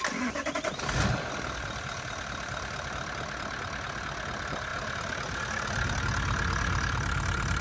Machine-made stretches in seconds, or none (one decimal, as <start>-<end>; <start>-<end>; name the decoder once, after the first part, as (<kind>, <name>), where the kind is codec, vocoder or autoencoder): 4.7-6.0 (vocoder, BigVGAN v2)